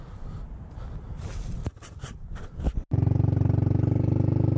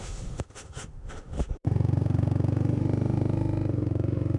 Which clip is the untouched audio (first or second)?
first